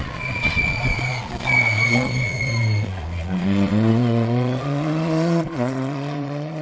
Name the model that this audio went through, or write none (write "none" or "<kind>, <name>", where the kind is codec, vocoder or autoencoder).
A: vocoder, Vocos